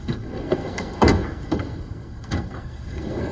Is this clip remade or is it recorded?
remade